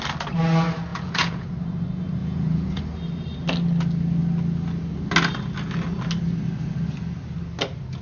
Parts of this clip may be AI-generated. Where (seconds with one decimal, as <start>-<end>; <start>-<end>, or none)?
0.9-1.5; 2.2-2.8